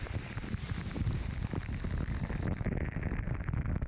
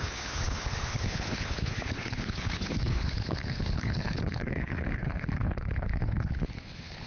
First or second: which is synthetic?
second